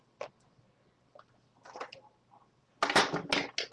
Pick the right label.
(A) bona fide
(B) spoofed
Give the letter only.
A